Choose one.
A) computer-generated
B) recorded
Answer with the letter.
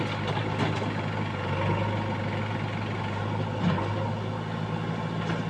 B